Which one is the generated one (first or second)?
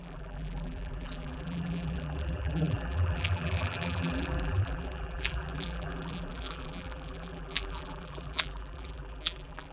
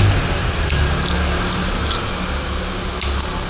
first